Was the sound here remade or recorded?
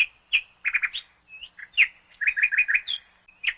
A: recorded